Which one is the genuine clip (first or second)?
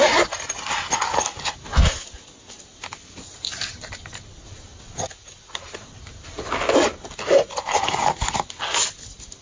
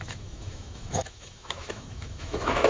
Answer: first